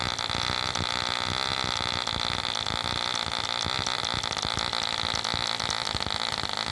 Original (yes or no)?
yes